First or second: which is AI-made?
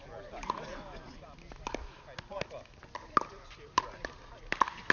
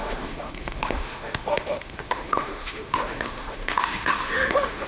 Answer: second